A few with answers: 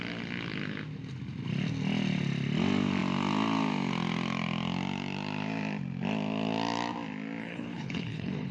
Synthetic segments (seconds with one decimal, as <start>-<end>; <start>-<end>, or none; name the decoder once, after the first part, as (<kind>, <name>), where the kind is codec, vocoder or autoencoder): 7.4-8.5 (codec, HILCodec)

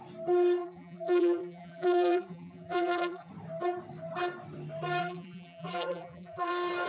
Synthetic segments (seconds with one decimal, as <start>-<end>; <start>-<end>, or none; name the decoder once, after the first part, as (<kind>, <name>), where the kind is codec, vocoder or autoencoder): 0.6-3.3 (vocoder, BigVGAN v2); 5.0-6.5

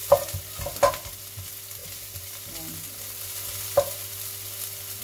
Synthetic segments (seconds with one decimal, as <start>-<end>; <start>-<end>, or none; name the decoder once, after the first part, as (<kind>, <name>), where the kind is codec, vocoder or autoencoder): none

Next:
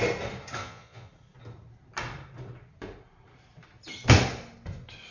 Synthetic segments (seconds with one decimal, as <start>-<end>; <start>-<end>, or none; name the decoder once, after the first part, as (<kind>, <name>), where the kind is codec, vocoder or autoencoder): 0.6-1.1 (vocoder, Vocos)